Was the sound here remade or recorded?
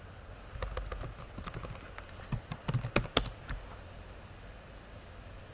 recorded